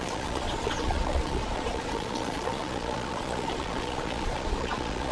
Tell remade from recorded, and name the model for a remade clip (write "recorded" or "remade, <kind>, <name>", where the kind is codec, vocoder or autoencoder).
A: remade, vocoder, Vocos